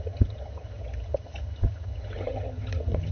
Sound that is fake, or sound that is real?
fake